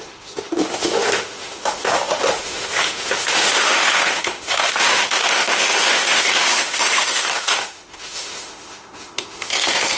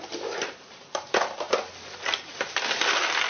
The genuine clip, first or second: second